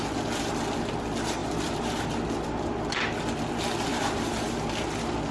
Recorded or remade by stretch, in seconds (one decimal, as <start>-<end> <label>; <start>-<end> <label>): 0.0-1.4 recorded; 1.4-2.1 remade; 2.1-3.9 recorded; 3.9-4.5 remade; 4.5-5.3 recorded